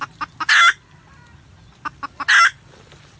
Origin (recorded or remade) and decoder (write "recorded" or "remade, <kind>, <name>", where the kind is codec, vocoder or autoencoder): recorded